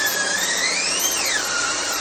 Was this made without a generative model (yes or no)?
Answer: no